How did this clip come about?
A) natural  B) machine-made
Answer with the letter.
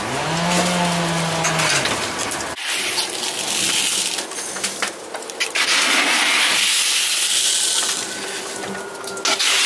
A